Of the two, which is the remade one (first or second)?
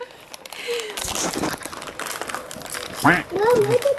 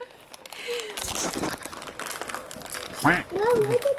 first